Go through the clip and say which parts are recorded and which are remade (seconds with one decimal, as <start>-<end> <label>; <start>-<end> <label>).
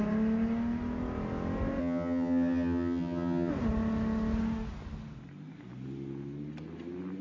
0.0-1.8 recorded; 1.8-3.5 remade; 3.5-7.2 recorded